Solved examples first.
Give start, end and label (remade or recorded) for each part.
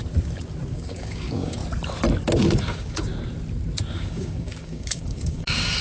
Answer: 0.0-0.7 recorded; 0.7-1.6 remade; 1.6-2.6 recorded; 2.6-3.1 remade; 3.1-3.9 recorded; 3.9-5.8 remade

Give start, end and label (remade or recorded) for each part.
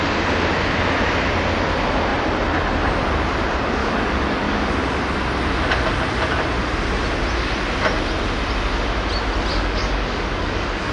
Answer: 0.0-3.8 recorded; 3.8-4.7 remade; 4.7-9.5 recorded; 9.5-10.9 remade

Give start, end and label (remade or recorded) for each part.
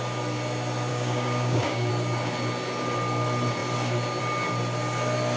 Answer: 0.0-0.9 recorded; 0.9-1.9 remade; 1.9-5.4 recorded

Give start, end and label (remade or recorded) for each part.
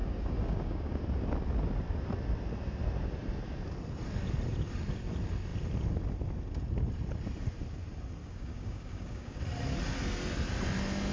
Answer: 0.0-1.0 remade; 1.0-8.2 recorded; 8.2-9.4 remade; 9.4-11.1 recorded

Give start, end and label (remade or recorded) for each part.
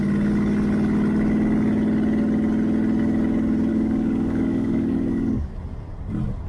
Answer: 0.0-3.7 recorded; 3.7-5.5 remade; 5.5-6.5 recorded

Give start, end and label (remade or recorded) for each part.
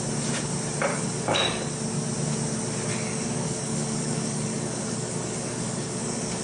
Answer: 0.0-0.9 recorded; 0.9-1.7 remade; 1.7-2.9 recorded; 2.9-6.4 remade